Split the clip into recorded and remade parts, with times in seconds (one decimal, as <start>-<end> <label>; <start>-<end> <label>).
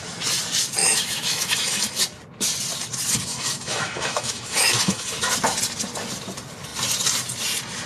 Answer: 0.0-0.8 recorded; 0.8-2.0 remade; 2.0-3.3 recorded; 3.3-5.3 remade; 5.3-7.9 recorded